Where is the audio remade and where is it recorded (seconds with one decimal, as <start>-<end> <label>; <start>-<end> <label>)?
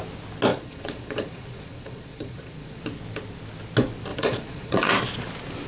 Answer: 0.0-0.5 recorded; 0.5-2.8 remade; 2.8-4.1 recorded; 4.1-4.9 remade; 4.9-5.7 recorded